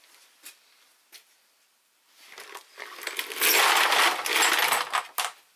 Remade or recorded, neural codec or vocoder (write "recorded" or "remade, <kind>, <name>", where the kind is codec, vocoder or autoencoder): recorded